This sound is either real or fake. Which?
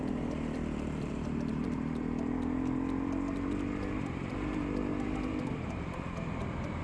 fake